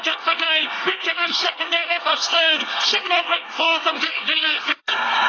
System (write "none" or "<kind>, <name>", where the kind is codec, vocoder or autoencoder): codec, SNAC